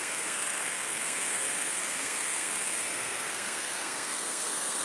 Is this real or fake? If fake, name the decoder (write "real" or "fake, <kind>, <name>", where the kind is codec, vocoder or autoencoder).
fake, codec, SNAC